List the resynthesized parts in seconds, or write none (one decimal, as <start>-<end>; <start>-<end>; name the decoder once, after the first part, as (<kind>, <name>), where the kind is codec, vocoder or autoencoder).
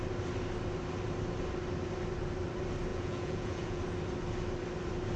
2.9-3.8 (vocoder, Vocos)